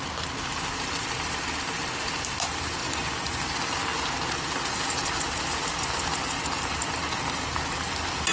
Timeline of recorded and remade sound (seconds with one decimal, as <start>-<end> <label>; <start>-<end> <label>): 0.0-2.8 recorded; 2.8-3.4 remade; 3.4-8.3 recorded